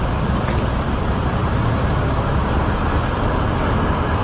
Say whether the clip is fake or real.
real